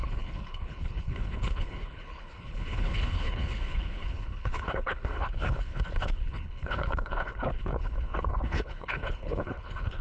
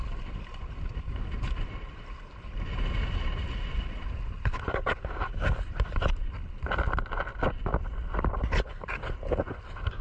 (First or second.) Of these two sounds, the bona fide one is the second